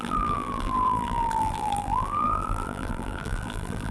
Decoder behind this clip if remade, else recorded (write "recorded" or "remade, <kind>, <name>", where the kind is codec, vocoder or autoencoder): remade, vocoder, BigVGAN v2